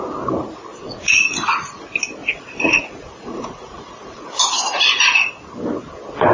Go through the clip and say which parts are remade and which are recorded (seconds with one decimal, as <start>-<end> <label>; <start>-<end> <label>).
0.0-0.7 recorded; 0.7-1.8 remade; 1.8-2.2 recorded; 2.2-4.4 remade; 4.4-6.3 recorded